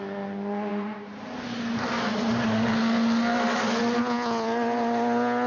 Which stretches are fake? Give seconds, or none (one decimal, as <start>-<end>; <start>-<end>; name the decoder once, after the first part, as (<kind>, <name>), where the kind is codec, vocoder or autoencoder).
none